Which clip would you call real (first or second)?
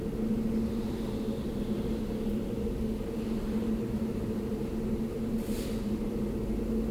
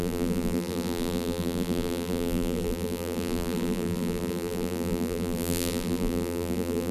first